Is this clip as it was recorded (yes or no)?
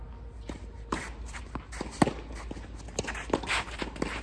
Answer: yes